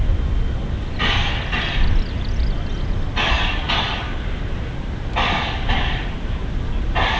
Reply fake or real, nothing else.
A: real